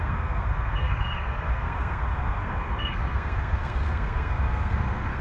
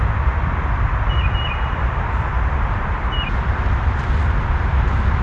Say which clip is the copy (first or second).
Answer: first